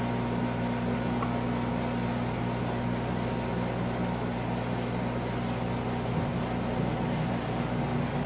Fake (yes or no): no